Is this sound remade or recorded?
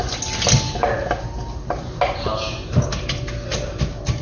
recorded